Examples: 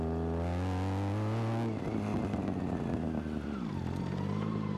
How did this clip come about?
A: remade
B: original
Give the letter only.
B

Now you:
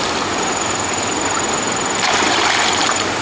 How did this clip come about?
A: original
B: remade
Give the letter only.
B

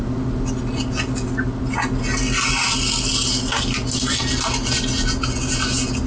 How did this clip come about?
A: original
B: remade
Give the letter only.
A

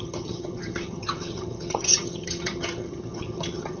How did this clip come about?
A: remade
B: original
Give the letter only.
A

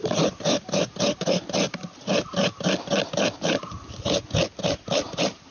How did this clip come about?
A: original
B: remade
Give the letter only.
A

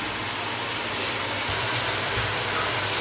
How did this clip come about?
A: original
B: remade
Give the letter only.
A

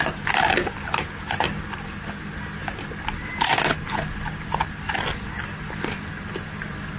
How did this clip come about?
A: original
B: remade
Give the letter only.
A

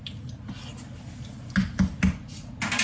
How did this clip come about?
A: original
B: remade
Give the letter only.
A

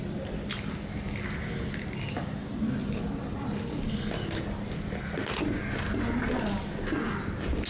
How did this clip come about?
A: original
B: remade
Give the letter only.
A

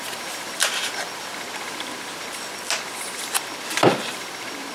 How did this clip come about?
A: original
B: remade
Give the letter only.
A